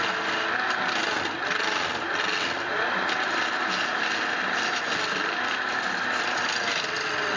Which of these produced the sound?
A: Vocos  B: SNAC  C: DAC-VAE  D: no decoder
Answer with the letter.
D